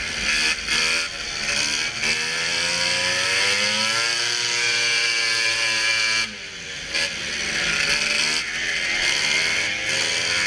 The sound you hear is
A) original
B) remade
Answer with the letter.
A